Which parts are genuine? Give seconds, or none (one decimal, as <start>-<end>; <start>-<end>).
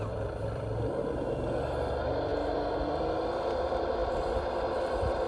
2.3-3.3